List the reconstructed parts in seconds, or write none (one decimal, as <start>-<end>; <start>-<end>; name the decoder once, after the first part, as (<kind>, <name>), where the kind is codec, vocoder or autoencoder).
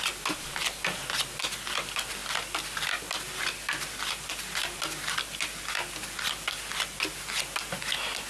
none